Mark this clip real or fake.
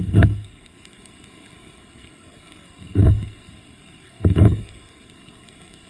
fake